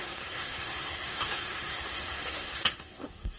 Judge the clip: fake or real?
fake